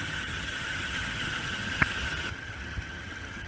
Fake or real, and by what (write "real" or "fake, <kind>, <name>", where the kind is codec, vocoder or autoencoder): fake, vocoder, HiFi-GAN